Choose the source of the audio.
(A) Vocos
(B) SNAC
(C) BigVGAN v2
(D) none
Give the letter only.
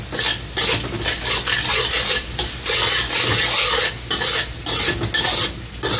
D